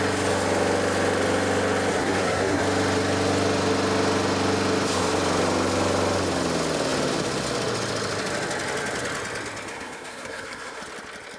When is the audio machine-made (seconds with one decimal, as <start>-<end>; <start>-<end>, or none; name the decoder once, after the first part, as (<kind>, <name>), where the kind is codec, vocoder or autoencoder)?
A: 1.9-2.6 (codec, SNAC); 9.7-10.8